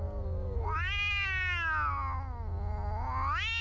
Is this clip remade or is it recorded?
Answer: recorded